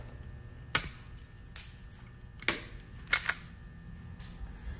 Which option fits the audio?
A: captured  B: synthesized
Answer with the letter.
A